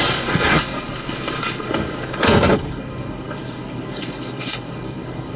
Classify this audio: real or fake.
fake